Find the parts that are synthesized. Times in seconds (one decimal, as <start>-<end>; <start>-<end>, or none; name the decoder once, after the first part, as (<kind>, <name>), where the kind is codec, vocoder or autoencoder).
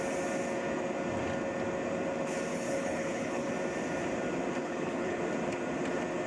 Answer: 2.5-3.5 (codec, HILCodec); 4.6-5.2